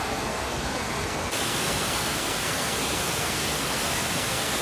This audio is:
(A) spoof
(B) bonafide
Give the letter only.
A